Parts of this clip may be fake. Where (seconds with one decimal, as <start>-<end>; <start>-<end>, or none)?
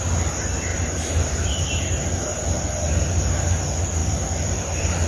0.7-2.6